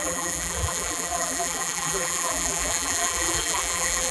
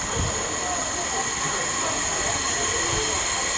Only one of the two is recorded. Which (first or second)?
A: second